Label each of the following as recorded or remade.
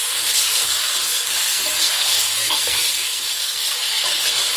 remade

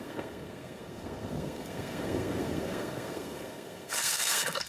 remade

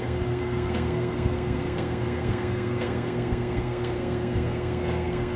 remade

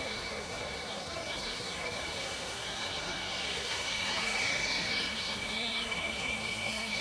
remade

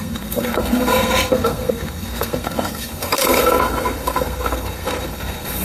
remade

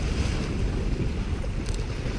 recorded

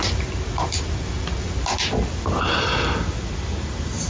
recorded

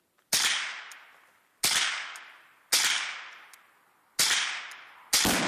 recorded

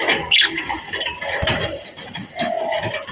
recorded